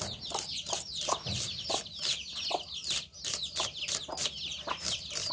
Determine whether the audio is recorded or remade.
recorded